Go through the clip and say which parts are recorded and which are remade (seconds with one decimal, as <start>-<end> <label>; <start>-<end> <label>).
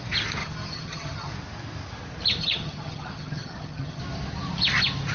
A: 0.0-0.4 recorded; 0.4-1.3 remade; 1.3-2.4 recorded; 2.4-4.0 remade; 4.0-5.1 recorded